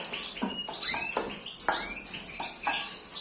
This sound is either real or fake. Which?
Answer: real